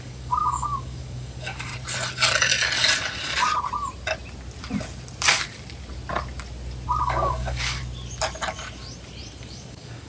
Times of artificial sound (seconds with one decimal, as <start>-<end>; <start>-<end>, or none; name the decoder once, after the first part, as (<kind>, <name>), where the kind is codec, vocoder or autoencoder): 0.0-1.7 (codec, DAC); 7.0-7.8; 9.5-10.1